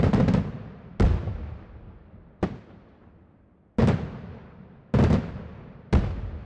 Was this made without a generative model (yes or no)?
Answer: yes